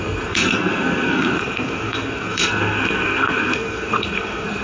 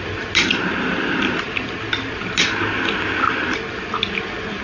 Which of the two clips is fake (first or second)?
first